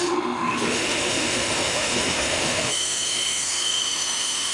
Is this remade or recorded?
remade